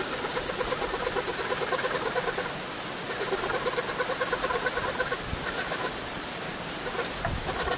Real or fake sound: real